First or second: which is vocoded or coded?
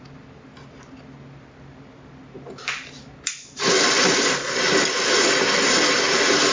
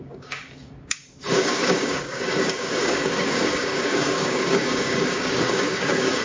second